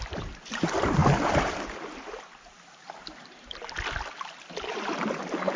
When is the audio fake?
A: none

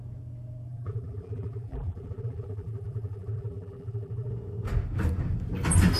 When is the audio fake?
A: 0.7-4.3